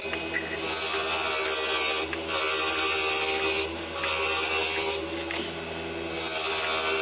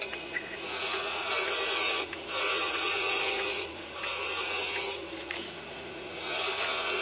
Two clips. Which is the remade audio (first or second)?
second